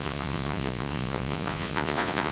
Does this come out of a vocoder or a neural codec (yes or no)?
yes